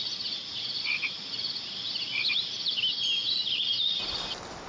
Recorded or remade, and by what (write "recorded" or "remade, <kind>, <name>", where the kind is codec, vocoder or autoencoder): recorded